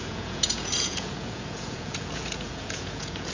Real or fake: fake